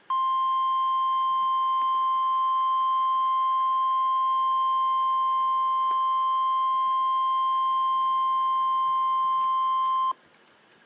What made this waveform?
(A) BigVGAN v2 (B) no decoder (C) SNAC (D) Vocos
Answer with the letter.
B